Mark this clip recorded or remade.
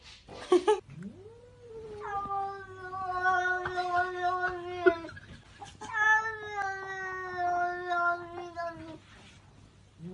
recorded